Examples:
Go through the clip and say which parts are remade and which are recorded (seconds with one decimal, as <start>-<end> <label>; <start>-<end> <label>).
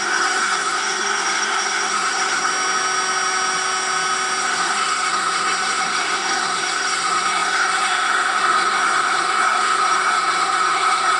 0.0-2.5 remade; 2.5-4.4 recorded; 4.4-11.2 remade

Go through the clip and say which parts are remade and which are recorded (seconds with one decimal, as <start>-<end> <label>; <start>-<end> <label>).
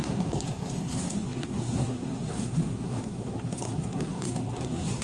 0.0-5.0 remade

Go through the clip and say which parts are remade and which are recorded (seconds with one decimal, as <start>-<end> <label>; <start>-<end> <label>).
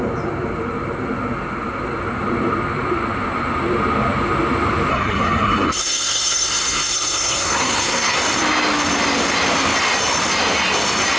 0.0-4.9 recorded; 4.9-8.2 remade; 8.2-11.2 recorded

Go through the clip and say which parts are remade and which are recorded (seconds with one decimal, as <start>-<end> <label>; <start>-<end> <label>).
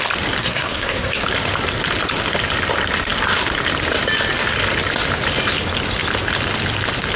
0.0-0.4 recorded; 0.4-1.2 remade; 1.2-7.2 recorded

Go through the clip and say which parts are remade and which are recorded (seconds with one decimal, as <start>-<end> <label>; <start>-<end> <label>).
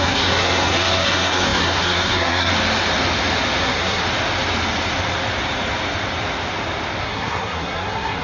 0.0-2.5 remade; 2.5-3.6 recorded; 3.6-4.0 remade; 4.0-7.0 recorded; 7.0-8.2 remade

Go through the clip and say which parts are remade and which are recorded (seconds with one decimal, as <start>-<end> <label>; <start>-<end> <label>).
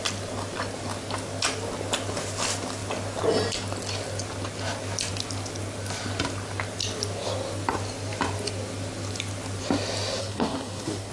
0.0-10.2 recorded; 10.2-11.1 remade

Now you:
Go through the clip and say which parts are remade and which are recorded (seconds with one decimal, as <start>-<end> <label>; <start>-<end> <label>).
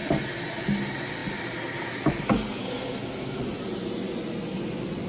0.0-2.6 recorded; 2.6-3.4 remade; 3.4-5.1 recorded